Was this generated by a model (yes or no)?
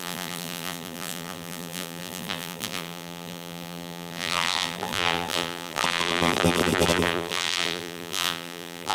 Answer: yes